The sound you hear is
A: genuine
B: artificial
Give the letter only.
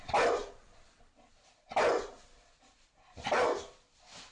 A